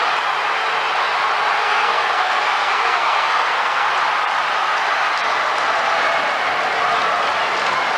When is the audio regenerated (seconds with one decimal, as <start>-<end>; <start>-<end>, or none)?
1.6-3.9